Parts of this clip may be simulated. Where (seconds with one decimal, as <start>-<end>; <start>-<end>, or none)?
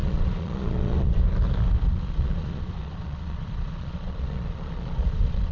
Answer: 0.0-1.2; 1.9-5.5